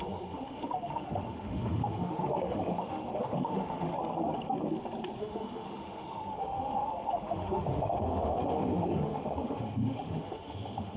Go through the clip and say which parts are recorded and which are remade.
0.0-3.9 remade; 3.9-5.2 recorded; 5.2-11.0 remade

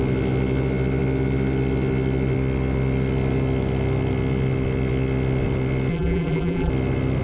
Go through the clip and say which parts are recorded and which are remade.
0.0-5.9 recorded; 5.9-6.7 remade; 6.7-7.2 recorded

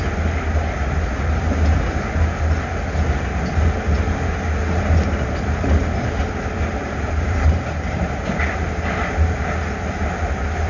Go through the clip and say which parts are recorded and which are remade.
0.0-6.8 recorded; 6.8-8.4 remade; 8.4-10.7 recorded